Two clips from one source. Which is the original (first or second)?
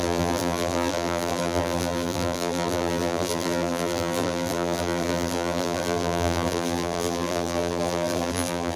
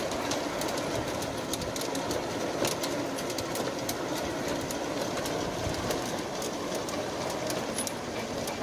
second